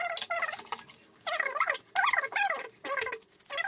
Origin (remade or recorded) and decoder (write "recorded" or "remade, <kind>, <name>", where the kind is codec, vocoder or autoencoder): recorded